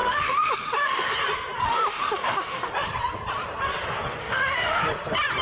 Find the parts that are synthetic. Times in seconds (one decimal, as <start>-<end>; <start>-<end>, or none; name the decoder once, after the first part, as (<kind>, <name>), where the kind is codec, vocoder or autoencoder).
0.0-1.1 (autoencoder, DAC-VAE); 1.6-2.7; 4.2-4.8